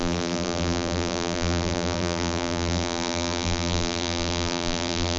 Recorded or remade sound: remade